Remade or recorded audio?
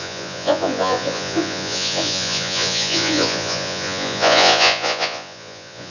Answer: remade